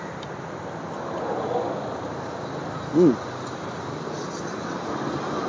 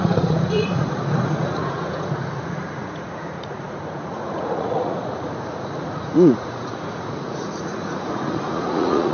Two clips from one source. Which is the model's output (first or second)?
second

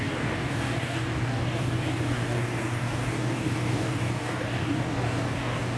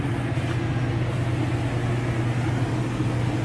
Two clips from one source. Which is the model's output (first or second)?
first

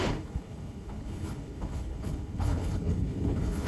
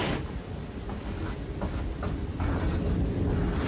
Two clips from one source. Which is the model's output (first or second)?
first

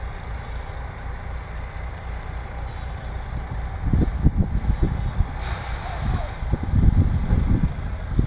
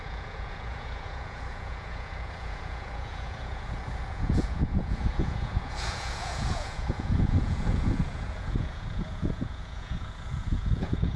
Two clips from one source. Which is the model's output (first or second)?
second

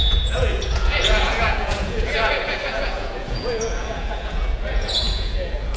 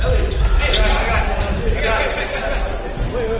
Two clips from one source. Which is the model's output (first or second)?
first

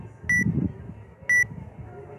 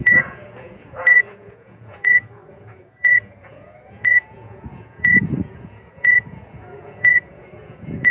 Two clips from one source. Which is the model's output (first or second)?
second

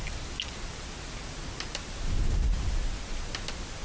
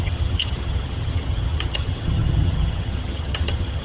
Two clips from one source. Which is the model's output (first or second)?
second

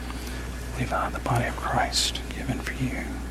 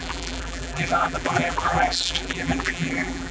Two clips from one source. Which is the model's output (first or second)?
second